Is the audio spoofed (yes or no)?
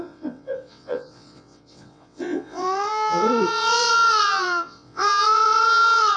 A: yes